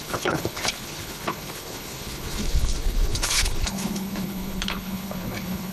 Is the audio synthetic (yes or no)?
yes